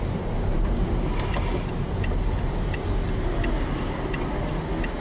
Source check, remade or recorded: recorded